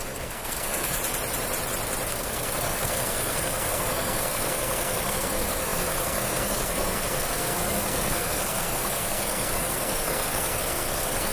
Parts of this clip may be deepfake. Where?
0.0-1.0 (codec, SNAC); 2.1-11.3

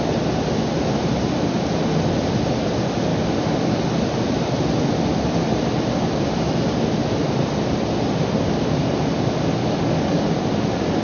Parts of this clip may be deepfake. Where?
3.1-3.8 (codec, DAC); 9.6-10.2

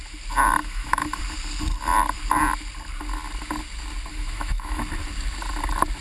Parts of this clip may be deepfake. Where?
0.6-1.2 (autoencoder, DAC-VAE); 4.1-4.8

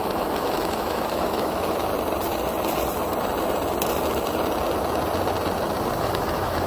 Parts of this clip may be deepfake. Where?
0.0-1.9 (autoencoder, DAC-VAE); 5.9-6.7

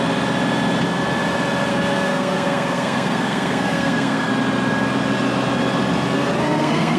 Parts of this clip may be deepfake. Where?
1.7-4.3 (codec, SNAC); 6.4-7.0

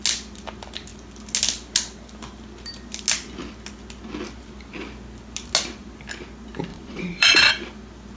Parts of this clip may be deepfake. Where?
6.7-7.5 (vocoder, Vocos)

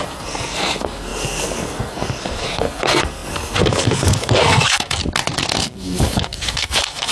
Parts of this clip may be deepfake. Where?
0.0-5.0 (codec, SNAC); 5.6-7.1